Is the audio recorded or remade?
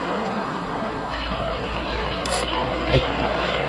remade